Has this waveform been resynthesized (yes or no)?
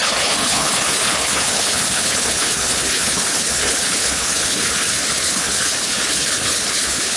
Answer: yes